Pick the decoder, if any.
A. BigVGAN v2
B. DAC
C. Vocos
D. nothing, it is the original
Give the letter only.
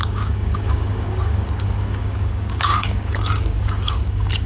B